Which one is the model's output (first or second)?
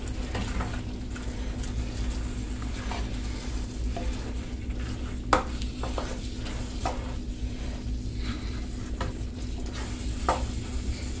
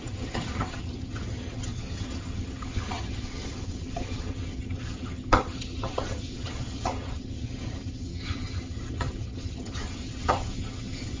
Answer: second